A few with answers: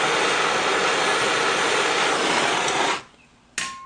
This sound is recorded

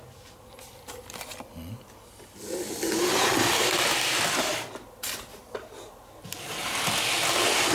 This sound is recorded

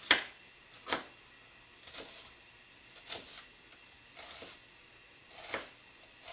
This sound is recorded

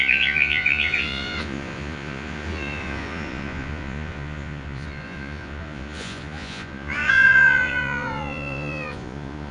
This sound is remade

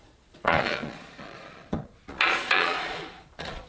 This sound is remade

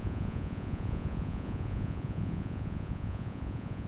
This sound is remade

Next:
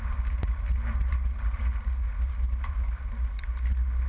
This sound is recorded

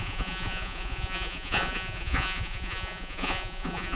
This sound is remade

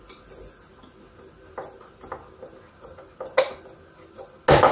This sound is recorded